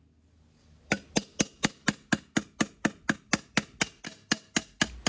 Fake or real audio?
real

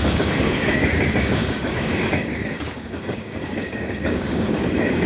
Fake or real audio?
fake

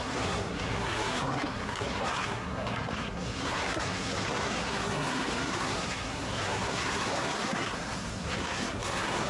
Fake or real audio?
fake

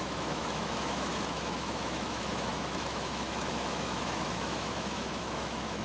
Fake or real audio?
fake